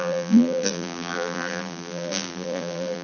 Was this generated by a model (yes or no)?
yes